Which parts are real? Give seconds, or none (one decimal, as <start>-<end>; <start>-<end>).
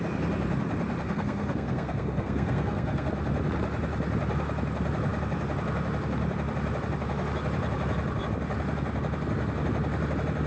0.0-1.0; 3.1-10.5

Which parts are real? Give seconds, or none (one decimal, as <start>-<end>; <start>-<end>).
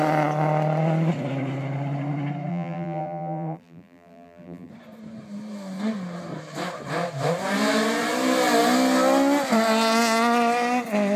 0.0-2.5; 4.7-11.2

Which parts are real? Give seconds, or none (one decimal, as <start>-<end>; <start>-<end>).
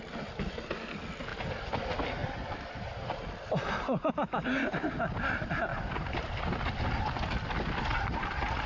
0.0-2.2; 4.1-5.7; 6.6-8.7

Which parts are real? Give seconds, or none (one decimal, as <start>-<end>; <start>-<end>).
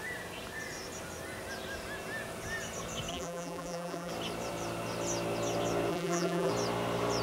0.0-3.1; 4.1-5.9; 6.5-7.2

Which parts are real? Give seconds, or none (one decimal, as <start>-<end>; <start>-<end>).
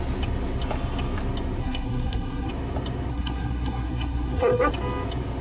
0.0-1.6; 2.5-3.1; 4.7-5.4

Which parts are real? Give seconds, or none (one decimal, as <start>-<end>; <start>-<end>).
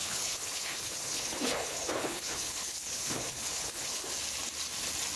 4.1-5.2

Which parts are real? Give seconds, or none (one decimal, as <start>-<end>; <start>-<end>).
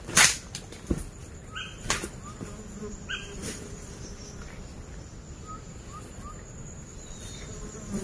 0.0-8.0